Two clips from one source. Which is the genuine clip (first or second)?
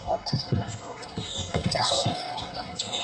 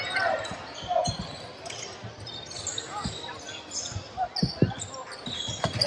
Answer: second